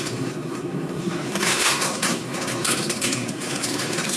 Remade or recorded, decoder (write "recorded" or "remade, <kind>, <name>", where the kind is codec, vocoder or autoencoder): remade, codec, SNAC